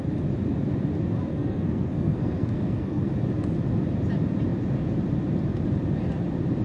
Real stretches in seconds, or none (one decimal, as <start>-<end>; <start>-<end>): 0.0-1.3; 3.1-6.6